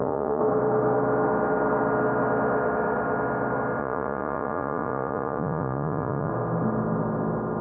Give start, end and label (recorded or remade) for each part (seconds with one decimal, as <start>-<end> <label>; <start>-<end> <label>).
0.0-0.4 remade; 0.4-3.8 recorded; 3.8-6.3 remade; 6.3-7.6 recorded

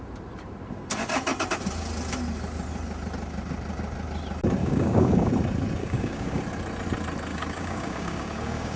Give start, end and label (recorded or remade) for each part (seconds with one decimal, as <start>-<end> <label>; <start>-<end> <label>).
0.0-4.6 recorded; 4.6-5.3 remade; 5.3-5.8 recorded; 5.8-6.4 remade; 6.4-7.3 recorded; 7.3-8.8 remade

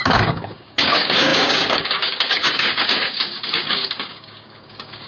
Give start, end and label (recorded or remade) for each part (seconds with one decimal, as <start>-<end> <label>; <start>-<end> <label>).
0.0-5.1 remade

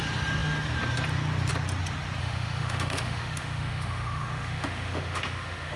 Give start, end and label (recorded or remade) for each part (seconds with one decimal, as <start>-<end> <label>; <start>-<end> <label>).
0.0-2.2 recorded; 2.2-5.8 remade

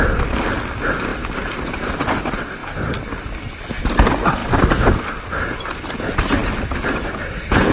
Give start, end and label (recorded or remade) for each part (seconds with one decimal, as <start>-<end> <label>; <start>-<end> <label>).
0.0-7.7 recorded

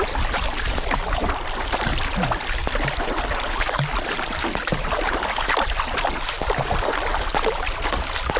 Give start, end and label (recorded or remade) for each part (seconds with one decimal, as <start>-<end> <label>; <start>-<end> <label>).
0.0-8.4 recorded

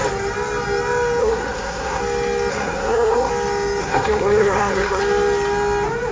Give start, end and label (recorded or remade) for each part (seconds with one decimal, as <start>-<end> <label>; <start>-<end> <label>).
0.0-1.2 recorded; 1.2-2.0 remade; 2.0-2.5 recorded; 2.5-3.3 remade; 3.3-3.8 recorded; 3.8-5.0 remade; 5.0-6.1 recorded